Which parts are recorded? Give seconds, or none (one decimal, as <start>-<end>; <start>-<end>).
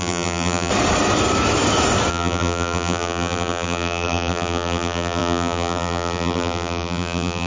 0.7-2.1